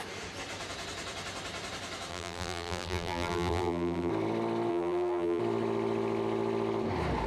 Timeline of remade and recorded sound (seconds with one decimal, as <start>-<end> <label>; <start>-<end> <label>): 0.0-2.1 recorded; 2.1-4.1 remade; 4.1-4.7 recorded; 4.7-5.4 remade; 5.4-7.3 recorded